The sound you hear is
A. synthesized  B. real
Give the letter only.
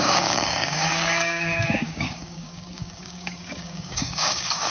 A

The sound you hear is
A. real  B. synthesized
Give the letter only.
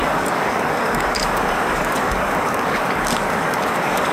B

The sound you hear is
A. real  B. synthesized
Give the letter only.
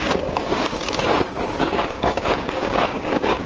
B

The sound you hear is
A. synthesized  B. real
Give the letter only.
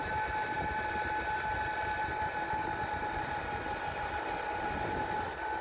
B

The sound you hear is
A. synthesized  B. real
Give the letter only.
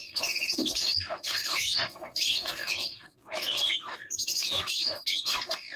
A